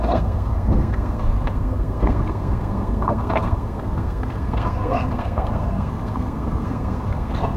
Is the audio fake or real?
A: fake